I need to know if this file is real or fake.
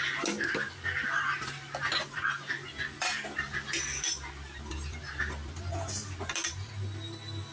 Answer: real